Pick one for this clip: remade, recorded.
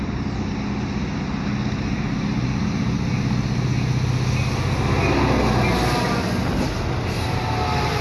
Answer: recorded